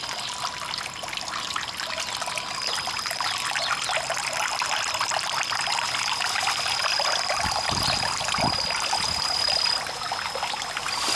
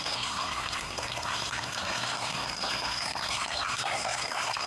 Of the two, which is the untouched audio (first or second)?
first